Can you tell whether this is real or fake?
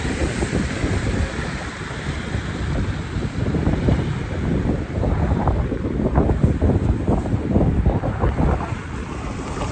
fake